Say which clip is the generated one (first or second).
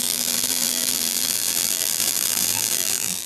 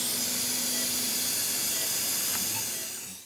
first